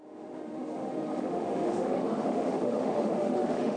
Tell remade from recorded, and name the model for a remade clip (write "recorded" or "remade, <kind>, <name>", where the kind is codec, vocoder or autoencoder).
remade, autoencoder, DAC-VAE